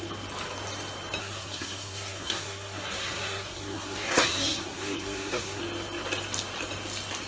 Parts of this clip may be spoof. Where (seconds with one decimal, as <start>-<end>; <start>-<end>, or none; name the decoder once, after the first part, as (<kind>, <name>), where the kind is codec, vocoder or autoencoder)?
1.2-5.6 (codec, SNAC)